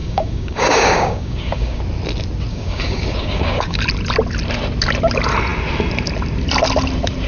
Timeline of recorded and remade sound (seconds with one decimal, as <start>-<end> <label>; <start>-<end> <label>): 0.0-1.8 remade; 1.8-2.5 recorded; 2.5-3.8 remade; 3.8-7.3 recorded